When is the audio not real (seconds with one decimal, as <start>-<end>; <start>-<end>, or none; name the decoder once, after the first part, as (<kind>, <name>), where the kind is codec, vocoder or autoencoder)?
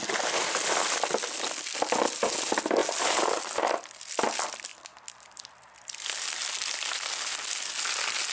none